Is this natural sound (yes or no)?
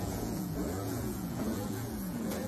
no